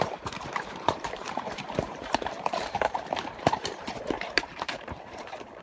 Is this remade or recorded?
remade